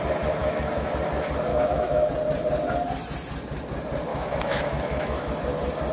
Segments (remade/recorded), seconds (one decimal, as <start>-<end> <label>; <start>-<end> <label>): 0.0-0.4 recorded; 0.4-0.9 remade; 0.9-1.5 recorded; 1.5-2.1 remade; 2.1-4.1 recorded; 4.1-5.3 remade; 5.3-5.9 recorded